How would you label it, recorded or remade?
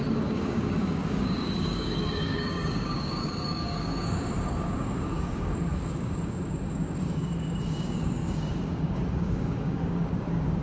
remade